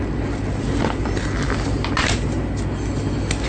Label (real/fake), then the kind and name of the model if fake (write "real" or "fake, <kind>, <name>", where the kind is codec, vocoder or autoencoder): real